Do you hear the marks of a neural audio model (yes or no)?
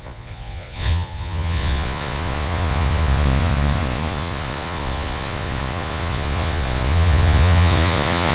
yes